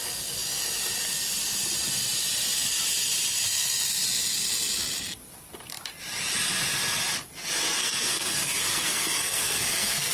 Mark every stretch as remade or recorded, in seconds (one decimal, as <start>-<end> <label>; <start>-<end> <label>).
0.0-7.8 recorded; 7.8-10.1 remade